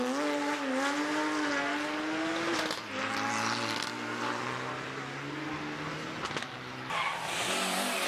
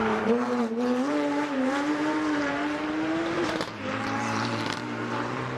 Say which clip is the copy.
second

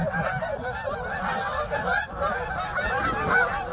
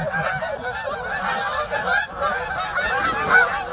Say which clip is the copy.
first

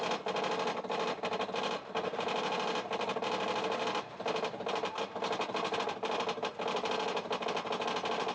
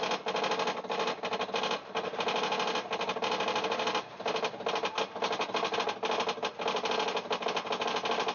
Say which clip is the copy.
first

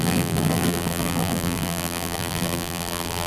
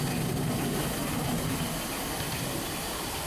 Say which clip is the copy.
first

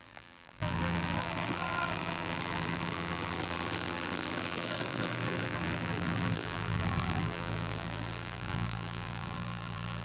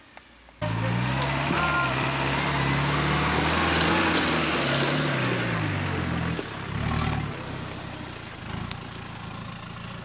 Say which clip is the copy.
first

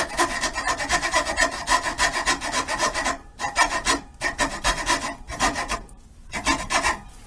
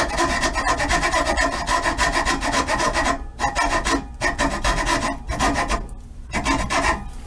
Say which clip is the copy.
first